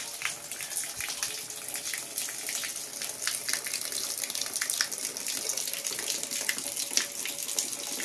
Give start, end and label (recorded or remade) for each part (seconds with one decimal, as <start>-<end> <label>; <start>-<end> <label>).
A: 0.0-8.0 recorded

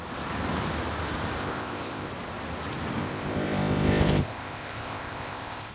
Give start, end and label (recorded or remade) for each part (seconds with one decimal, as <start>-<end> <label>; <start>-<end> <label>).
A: 0.0-1.4 recorded; 1.4-2.1 remade; 2.1-3.0 recorded; 3.0-5.7 remade